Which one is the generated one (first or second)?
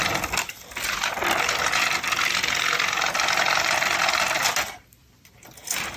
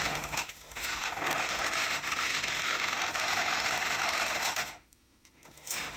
second